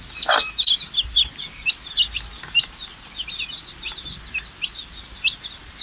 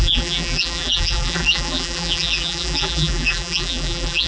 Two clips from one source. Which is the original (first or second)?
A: first